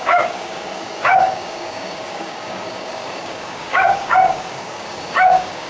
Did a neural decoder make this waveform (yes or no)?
yes